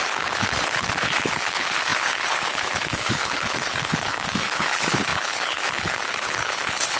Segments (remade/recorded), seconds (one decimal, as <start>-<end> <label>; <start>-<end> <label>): 0.0-7.0 remade